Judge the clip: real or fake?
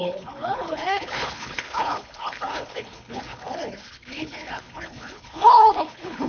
fake